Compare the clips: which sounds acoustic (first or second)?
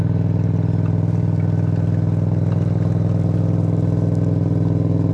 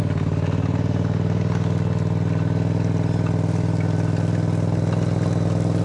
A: second